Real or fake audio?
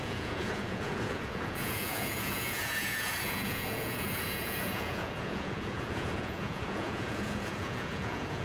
fake